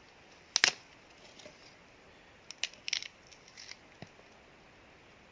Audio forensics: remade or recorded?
recorded